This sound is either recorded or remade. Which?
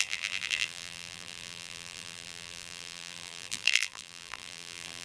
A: remade